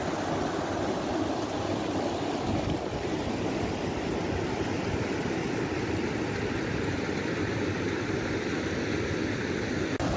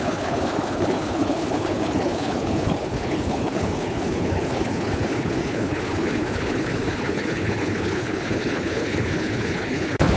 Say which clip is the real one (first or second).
first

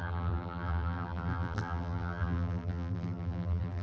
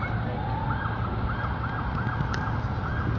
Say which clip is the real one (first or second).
second